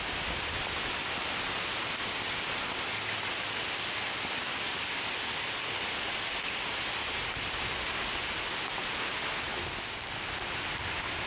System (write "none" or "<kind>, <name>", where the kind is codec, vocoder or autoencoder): none